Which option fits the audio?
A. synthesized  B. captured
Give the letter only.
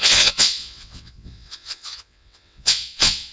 A